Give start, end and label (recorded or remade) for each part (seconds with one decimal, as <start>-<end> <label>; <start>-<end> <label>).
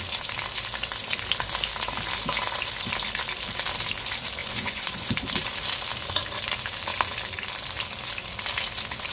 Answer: 0.0-4.4 recorded; 4.4-5.1 remade; 5.1-9.1 recorded